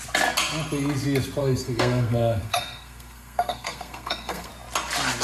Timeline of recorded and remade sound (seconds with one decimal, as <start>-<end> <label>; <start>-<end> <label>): 0.0-1.4 recorded; 1.4-4.5 remade; 4.5-5.2 recorded